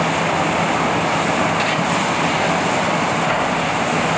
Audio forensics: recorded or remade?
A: recorded